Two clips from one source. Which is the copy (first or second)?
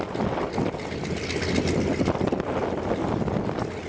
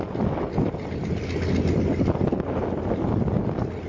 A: first